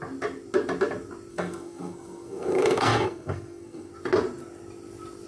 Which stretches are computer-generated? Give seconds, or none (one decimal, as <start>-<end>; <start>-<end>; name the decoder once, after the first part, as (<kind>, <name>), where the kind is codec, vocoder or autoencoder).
1.3-3.9 (codec, SNAC)